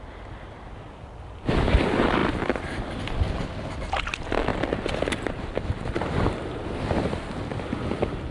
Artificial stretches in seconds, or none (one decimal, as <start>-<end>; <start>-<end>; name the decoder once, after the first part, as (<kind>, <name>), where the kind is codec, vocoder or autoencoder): none